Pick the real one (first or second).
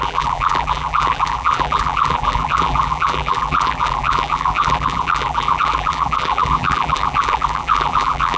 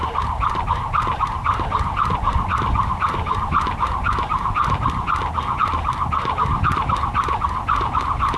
second